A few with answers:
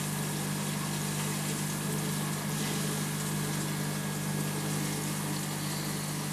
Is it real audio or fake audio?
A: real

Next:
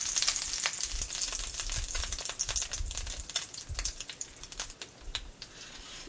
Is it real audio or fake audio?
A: real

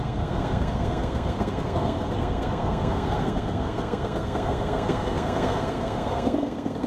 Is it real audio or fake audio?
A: fake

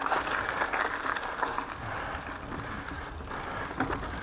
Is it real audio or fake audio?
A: real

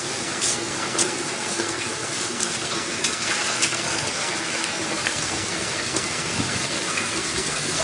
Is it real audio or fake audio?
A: fake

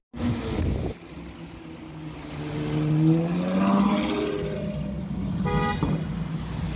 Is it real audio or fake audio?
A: real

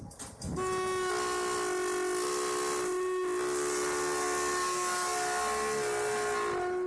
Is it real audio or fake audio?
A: real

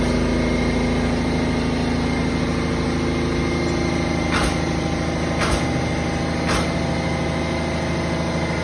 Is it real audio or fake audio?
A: real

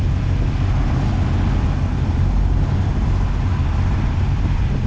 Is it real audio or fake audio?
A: real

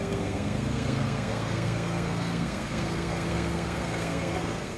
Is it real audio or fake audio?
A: fake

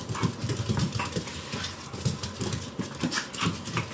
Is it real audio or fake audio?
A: real